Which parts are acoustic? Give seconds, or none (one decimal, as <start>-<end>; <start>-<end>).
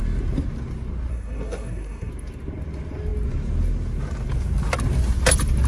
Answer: 0.0-1.1; 2.1-5.7